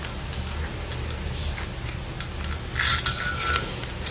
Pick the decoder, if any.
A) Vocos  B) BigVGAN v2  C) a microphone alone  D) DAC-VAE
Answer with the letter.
C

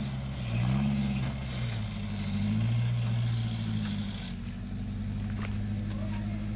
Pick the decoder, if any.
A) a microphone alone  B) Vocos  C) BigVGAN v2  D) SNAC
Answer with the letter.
A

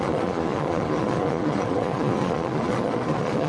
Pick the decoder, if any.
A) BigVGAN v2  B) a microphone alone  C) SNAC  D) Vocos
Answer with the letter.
D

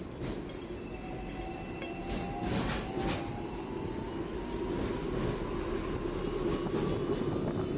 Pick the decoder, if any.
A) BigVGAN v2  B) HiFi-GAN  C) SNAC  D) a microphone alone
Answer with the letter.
D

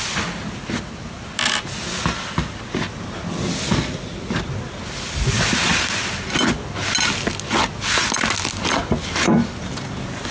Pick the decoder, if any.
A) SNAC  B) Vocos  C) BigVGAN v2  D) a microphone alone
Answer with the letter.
D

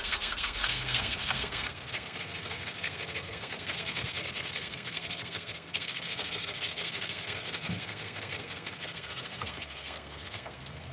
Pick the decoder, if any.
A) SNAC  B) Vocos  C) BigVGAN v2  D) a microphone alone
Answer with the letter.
A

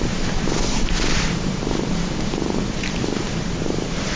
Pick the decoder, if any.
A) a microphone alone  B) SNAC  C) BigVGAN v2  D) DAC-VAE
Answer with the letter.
C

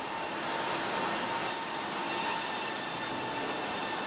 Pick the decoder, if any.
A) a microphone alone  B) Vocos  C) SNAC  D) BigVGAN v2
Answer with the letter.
D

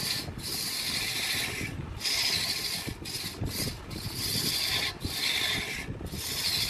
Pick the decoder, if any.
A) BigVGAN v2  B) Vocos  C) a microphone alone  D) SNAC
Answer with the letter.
C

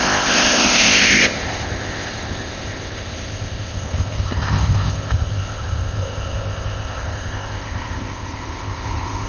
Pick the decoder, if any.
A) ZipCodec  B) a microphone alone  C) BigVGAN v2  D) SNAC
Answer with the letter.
A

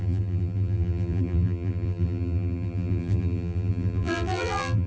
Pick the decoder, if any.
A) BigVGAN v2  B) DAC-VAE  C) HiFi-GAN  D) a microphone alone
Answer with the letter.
A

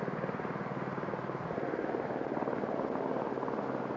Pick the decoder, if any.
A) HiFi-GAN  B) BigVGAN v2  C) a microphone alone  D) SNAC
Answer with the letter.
C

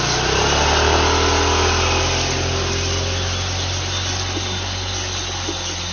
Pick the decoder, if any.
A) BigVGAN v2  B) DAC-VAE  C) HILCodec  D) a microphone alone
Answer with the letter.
D